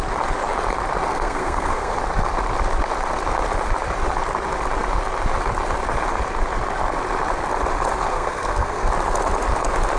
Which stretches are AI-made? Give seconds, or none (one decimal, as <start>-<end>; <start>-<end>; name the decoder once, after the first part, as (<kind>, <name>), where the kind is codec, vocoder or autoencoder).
1.1-2.0 (codec, SNAC); 8.1-8.9